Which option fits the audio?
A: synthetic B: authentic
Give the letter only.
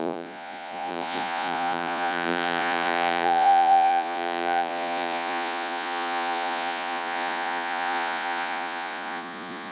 A